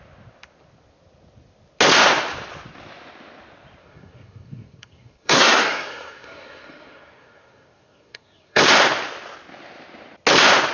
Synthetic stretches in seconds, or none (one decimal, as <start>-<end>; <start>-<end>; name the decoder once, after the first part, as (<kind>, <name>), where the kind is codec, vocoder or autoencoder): 3.8-8.6 (codec, SNAC)